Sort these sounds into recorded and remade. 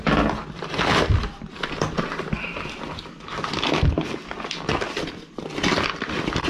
recorded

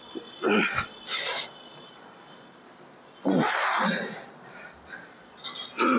recorded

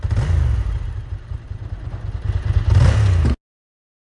recorded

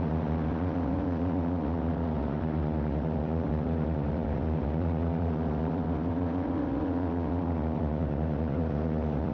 remade